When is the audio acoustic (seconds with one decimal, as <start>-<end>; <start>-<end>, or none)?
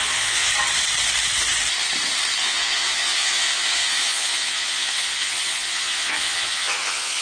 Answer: 0.5-2.4